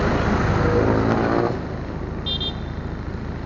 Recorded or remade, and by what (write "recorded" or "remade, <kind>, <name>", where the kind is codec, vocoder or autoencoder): recorded